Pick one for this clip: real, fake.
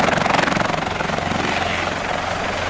real